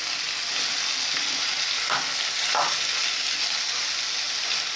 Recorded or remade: recorded